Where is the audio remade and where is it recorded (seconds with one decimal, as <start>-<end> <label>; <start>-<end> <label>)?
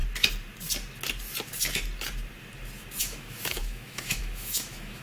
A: 0.0-3.0 recorded; 3.0-5.0 remade